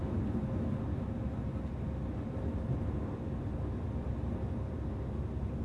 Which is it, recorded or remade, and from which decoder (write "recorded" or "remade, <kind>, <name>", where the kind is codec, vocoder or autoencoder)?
recorded